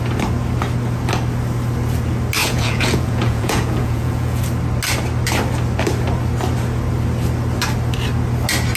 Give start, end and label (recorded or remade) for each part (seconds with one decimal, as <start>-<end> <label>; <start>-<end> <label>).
0.0-2.4 recorded; 2.4-4.4 remade; 4.4-8.8 recorded